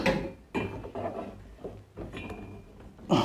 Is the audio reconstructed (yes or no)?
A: no